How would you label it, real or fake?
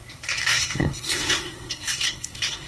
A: fake